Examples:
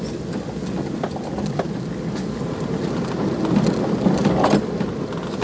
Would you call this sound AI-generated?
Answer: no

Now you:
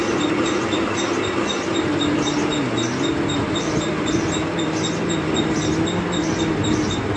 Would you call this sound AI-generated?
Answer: no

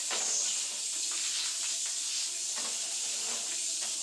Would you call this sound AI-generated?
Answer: no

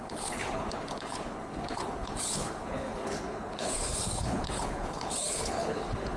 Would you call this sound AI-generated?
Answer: yes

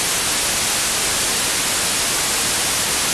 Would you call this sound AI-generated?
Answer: no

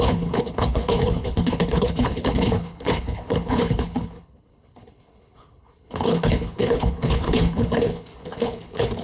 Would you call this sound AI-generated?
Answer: yes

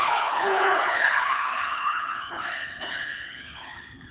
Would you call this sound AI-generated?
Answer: yes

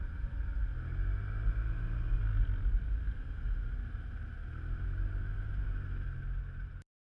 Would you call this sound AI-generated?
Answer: no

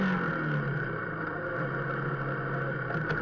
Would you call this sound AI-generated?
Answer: no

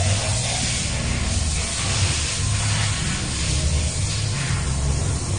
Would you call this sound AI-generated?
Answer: no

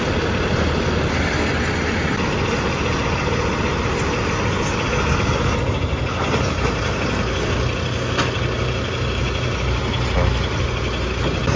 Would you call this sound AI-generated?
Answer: no